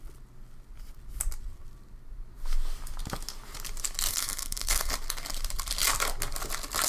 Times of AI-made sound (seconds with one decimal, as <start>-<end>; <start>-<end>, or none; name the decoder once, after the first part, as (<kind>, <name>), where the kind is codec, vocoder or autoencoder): 4.1-4.9 (codec, SNAC)